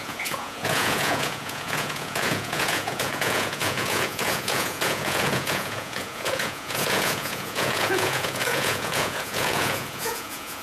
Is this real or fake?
fake